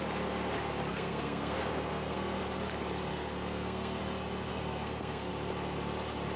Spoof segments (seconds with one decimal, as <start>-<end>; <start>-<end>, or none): 0.9-2.4; 3.1-4.0; 4.5-5.3